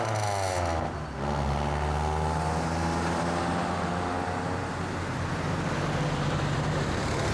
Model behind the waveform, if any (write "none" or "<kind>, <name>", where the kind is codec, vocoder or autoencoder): none